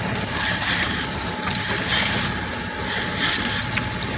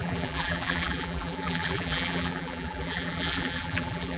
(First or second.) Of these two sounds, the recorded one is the first